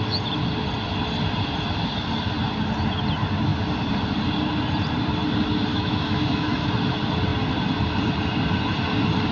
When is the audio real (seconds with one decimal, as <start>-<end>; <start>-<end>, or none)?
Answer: 0.0-5.7; 6.7-9.3

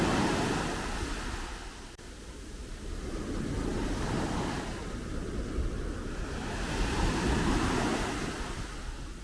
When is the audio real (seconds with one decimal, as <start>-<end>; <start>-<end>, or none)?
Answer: 0.0-9.2

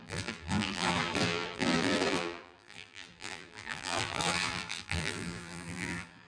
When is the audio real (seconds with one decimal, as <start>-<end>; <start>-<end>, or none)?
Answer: none

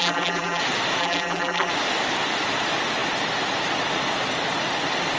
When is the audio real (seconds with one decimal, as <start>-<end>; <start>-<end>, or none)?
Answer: 0.6-1.0; 1.7-5.2

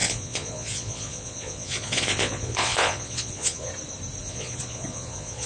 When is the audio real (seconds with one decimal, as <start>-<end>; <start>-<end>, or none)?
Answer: 3.7-4.2